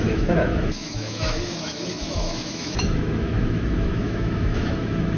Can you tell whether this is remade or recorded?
remade